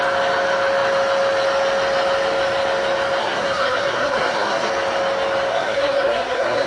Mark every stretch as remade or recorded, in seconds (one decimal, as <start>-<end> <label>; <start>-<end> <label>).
0.0-3.2 recorded; 3.2-4.7 remade; 4.7-5.5 recorded; 5.5-6.7 remade